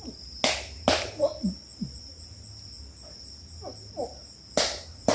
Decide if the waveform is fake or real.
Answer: real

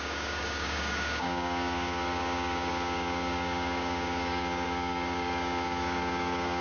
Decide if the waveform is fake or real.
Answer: fake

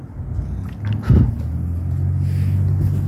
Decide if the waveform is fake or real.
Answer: real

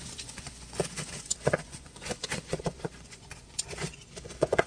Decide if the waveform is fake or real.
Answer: fake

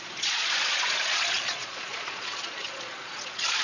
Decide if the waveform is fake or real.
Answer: fake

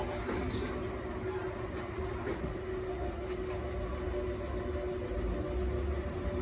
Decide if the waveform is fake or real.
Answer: real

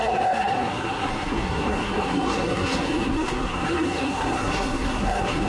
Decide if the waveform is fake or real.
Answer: fake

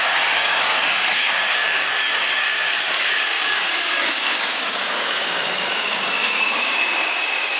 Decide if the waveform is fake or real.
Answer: fake